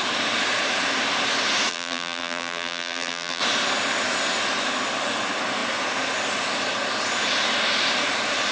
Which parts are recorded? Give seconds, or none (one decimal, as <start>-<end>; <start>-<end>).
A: 0.0-1.7; 3.4-8.5